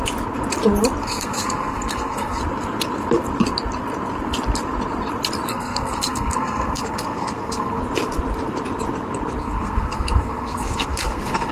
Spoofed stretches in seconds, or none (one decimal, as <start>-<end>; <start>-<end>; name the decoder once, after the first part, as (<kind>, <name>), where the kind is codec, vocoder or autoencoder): 1.0-2.4 (codec, SNAC); 5.5-7.8; 9.4-11.5